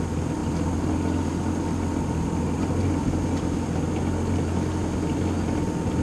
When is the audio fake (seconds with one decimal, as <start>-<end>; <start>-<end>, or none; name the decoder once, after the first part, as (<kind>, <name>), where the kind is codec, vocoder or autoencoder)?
none